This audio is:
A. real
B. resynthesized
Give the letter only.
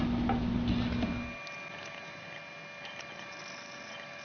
A